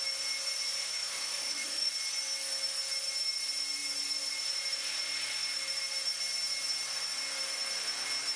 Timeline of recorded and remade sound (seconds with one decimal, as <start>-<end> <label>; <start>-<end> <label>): 0.0-0.8 recorded; 0.8-1.9 remade; 1.9-8.4 recorded